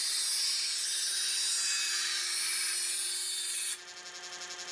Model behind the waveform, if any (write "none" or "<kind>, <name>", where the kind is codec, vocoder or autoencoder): none